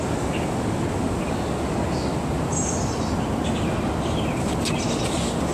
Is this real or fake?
real